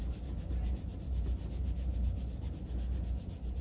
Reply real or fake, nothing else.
real